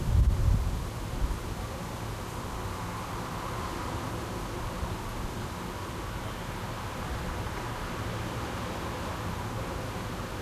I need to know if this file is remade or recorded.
recorded